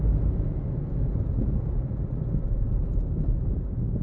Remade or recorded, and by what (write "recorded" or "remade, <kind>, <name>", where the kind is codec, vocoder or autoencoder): recorded